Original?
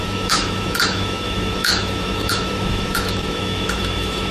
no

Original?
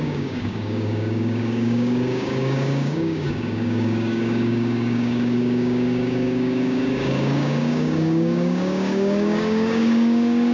no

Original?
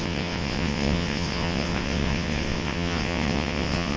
no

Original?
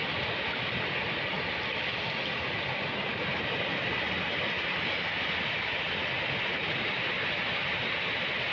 yes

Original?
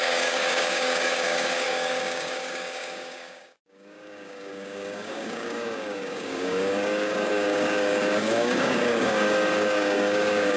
no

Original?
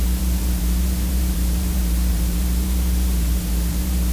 no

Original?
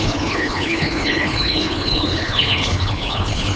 no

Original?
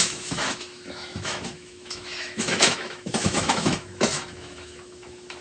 no